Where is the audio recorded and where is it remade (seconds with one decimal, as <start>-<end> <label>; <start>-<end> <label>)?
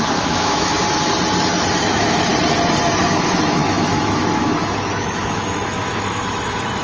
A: 0.0-0.7 remade; 0.7-1.8 recorded; 1.8-2.3 remade; 2.3-3.0 recorded; 3.0-6.8 remade